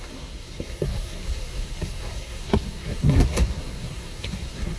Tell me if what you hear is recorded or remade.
remade